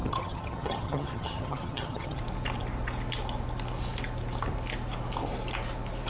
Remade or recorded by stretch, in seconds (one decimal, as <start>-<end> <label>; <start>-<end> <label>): 0.0-2.2 remade; 2.2-6.1 recorded